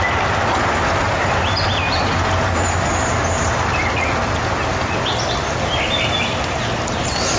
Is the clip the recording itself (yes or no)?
yes